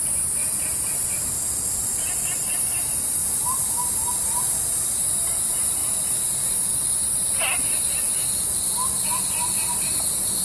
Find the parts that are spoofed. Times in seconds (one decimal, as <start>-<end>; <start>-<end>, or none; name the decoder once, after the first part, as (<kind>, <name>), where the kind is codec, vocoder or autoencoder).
0.4-0.9 (vocoder, BigVGAN v2); 3.2-5.0